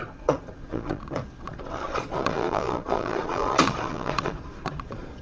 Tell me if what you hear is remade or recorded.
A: remade